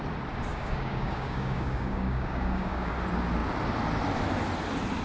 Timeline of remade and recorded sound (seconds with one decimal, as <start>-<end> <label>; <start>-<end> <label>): 0.0-0.5 recorded; 0.5-2.9 remade; 2.9-5.0 recorded